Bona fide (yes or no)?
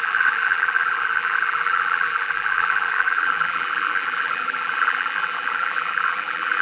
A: no